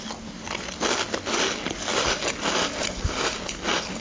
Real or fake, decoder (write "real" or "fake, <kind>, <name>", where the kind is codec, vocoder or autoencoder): real